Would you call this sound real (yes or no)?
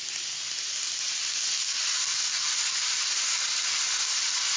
yes